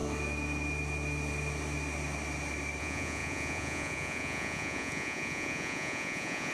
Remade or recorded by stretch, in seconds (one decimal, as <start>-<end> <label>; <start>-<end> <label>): 0.0-2.8 recorded; 2.8-6.5 remade